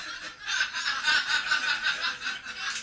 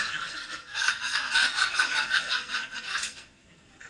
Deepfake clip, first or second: second